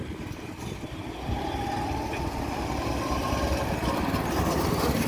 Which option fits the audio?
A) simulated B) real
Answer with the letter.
B